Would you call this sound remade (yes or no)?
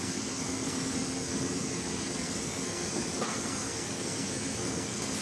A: yes